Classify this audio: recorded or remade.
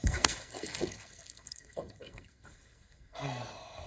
remade